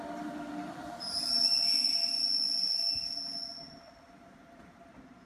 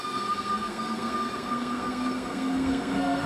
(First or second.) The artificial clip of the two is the second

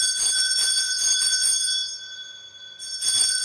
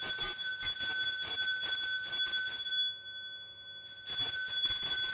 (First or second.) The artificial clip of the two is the first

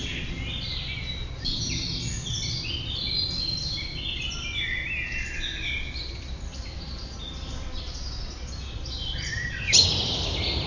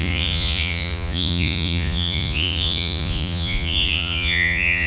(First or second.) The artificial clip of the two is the second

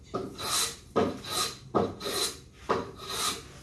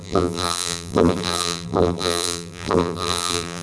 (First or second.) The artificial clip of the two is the second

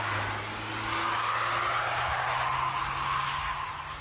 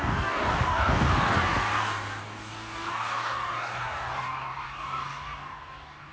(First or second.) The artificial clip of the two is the second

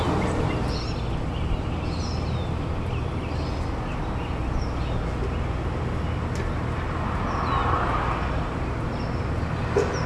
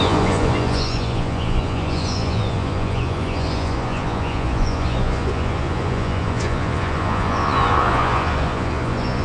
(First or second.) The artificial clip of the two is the second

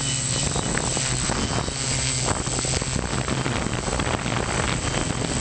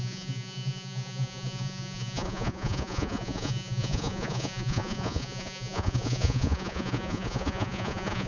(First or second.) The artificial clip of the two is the second